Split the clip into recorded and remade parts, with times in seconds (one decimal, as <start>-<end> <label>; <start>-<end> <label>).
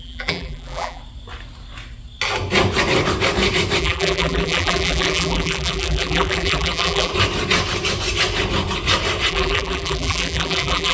0.0-1.0 remade; 1.0-3.8 recorded; 3.8-7.1 remade; 7.1-9.3 recorded; 9.3-10.9 remade